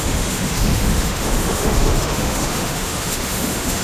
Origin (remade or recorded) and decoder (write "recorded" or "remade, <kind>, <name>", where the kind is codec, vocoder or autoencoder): remade, autoencoder, DAC-VAE